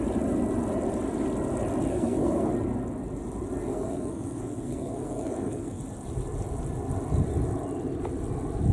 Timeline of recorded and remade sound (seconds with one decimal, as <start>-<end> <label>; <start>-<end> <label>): 0.0-1.9 recorded; 1.9-2.5 remade; 2.5-3.7 recorded; 3.7-5.8 remade; 5.8-8.7 recorded